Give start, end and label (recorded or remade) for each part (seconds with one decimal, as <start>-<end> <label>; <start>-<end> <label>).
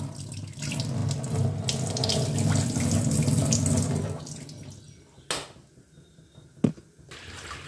0.0-7.7 recorded